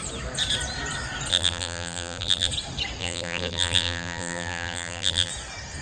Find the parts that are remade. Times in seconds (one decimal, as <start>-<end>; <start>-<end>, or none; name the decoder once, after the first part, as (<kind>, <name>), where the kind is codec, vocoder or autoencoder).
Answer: 1.3-2.5 (vocoder, BigVGAN v2); 3.0-5.3